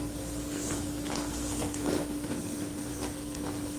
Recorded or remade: remade